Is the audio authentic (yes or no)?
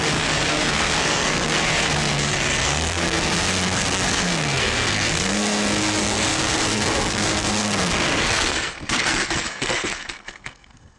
no